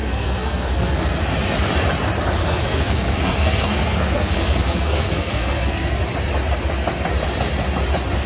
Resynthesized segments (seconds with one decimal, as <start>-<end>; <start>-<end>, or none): 0.0-1.2; 2.4-6.0